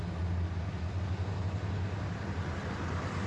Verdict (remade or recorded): recorded